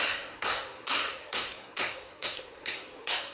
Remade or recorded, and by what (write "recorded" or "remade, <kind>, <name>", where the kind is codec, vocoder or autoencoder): remade, codec, SNAC